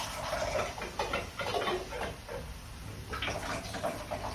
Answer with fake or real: real